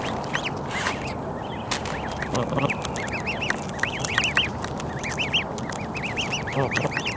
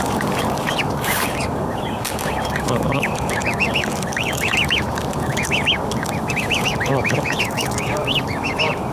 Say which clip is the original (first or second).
first